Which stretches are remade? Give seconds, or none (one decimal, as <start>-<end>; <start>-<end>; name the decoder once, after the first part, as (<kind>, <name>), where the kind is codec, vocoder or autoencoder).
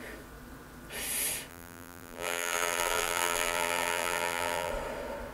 1.5-4.7 (vocoder, BigVGAN v2)